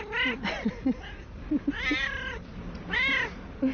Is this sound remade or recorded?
recorded